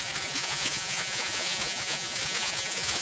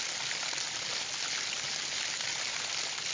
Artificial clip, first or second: first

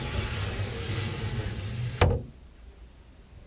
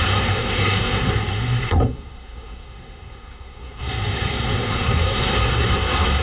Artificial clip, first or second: second